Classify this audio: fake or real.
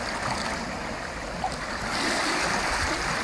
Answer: real